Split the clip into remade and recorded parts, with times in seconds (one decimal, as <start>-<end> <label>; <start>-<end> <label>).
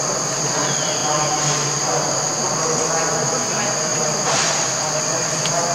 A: 0.0-1.0 recorded; 1.0-2.3 remade; 2.3-3.9 recorded; 3.9-4.5 remade; 4.5-5.7 recorded